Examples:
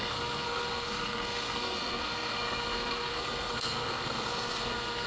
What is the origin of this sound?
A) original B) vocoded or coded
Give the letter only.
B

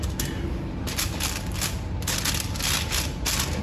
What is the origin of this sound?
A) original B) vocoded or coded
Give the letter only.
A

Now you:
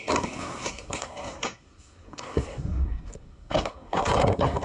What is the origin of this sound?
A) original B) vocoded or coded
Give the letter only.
B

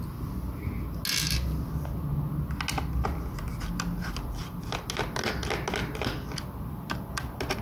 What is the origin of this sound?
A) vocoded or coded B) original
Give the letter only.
B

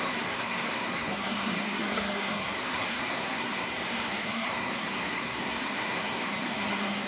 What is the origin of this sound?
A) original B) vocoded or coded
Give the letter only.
B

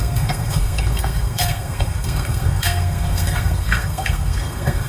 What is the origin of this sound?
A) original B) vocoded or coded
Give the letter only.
B